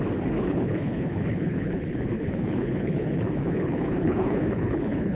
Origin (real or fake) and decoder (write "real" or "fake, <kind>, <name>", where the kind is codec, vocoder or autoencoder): fake, codec, HILCodec